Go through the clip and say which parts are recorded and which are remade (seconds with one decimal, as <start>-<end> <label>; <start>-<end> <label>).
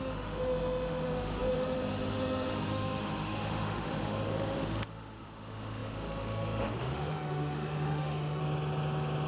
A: 0.0-8.4 remade; 8.4-9.3 recorded